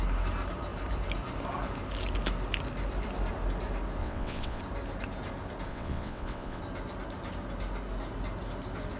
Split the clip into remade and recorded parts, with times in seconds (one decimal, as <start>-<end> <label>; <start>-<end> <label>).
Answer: 0.0-4.0 recorded; 4.0-4.6 remade; 4.6-5.7 recorded; 5.7-6.6 remade; 6.6-9.0 recorded